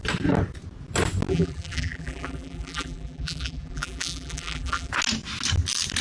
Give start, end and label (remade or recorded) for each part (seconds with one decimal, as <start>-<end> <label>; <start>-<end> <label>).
0.0-1.3 recorded; 1.3-4.9 remade; 4.9-6.0 recorded